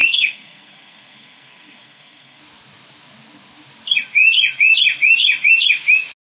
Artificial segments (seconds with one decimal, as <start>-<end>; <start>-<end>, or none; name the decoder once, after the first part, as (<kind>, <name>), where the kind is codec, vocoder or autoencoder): 0.0-2.4 (codec, SNAC)